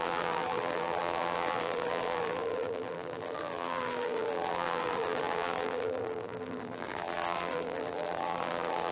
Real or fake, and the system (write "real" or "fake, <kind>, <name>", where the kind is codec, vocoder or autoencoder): fake, vocoder, BigVGAN v2